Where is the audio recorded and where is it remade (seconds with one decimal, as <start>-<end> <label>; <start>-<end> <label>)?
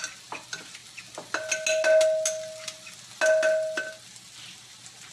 0.0-5.1 recorded